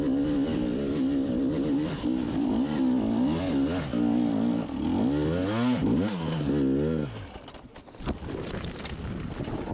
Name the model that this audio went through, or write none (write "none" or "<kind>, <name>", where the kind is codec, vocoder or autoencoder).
none